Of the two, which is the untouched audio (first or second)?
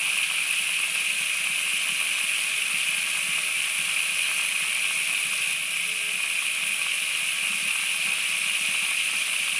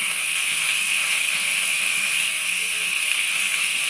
first